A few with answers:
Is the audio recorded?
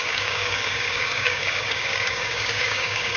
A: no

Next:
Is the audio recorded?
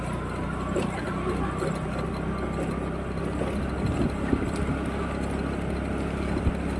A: yes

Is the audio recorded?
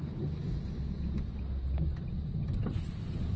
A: yes